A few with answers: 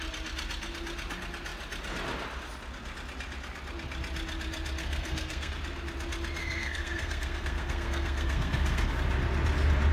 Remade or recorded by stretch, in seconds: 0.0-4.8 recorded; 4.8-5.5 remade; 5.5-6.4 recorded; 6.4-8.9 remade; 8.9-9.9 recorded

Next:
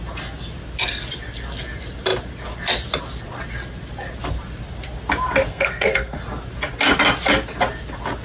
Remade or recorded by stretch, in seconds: 0.0-5.5 recorded; 5.5-6.2 remade; 6.2-8.2 recorded